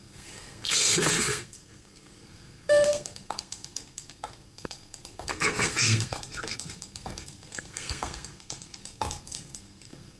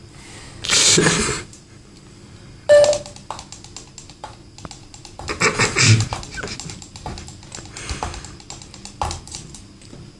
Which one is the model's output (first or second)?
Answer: first